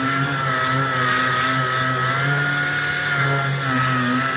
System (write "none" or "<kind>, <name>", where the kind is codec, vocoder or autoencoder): none